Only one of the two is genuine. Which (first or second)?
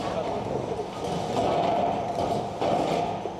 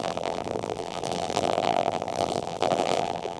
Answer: first